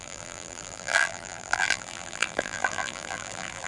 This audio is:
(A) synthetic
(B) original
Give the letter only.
A